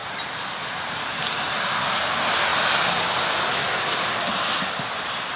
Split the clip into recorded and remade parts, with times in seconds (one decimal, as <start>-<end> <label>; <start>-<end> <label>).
0.0-5.4 recorded